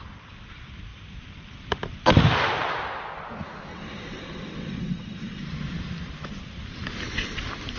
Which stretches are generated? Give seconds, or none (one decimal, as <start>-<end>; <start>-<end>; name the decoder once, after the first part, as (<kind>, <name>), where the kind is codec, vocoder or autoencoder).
3.7-5.4 (vocoder, WaveNeXt)